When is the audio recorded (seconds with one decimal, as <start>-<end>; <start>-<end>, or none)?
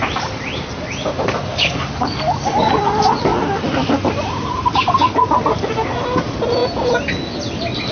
0.0-1.5; 2.7-7.9